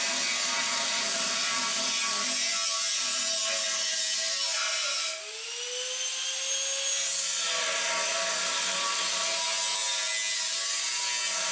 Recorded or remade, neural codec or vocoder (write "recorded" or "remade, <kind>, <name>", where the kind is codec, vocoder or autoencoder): recorded